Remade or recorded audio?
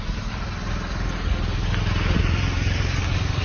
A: recorded